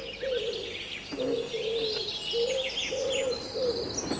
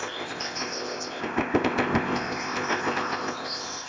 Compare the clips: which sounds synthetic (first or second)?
second